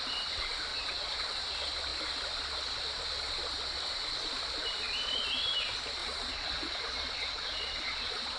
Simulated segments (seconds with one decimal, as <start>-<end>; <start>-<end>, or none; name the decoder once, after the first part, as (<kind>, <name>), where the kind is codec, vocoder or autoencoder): 0.7-1.4 (vocoder, Vocos); 6.0-8.4